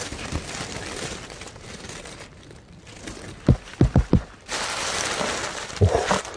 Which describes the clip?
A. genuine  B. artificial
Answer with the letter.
A